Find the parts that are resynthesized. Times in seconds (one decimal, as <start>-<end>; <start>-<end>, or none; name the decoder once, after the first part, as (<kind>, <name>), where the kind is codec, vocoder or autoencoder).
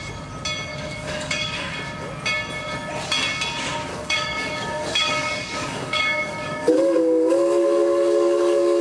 0.7-1.6 (codec, DAC); 3.9-8.8